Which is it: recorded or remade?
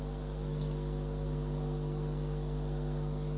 remade